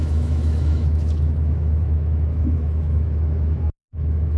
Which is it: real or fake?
fake